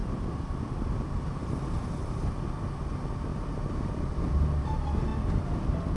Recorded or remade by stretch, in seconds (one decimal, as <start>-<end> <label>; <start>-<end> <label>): 0.0-3.3 recorded; 3.3-4.1 remade; 4.1-6.0 recorded